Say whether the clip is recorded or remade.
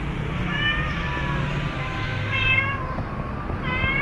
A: recorded